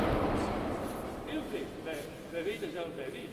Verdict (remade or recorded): recorded